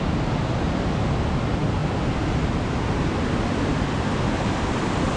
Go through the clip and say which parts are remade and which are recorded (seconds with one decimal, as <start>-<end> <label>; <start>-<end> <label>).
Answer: 0.0-5.2 recorded